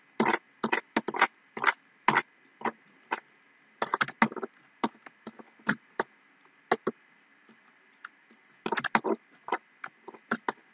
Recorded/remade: recorded